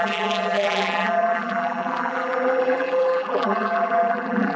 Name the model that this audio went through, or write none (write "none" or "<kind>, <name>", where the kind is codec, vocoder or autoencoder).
vocoder, BigVGAN v2